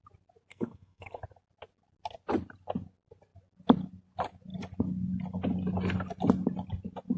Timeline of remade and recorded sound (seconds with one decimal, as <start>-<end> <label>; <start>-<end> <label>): 0.0-0.5 recorded; 0.5-1.2 remade; 1.2-7.2 recorded